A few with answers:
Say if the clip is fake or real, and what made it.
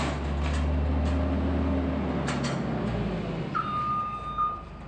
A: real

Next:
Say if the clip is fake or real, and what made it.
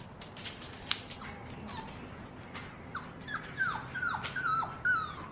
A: real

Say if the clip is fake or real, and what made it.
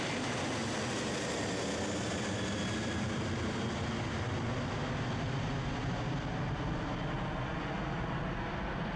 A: real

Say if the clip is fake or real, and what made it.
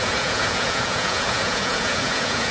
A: fake, vocoder, Vocos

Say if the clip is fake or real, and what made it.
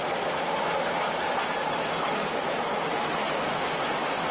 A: real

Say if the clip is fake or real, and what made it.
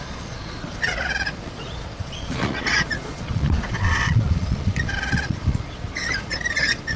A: fake, vocoder, Vocos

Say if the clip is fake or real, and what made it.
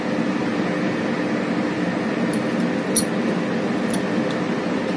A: real